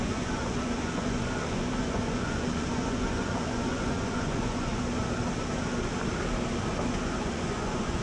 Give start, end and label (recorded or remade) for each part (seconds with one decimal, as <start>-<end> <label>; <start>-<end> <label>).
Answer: 0.0-4.7 remade; 4.7-6.9 recorded; 6.9-8.0 remade